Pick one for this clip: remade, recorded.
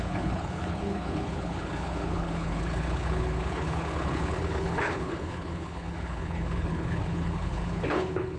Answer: remade